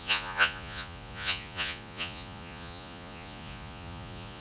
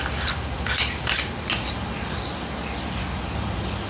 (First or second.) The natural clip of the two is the second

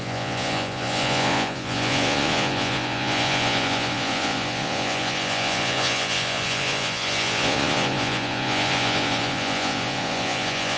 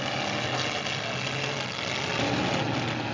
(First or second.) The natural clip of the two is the second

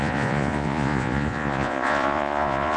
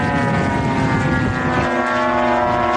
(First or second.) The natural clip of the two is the second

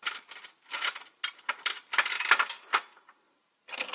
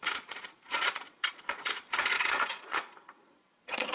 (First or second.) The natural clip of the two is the first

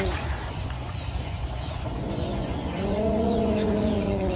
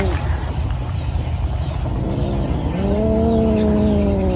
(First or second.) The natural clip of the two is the second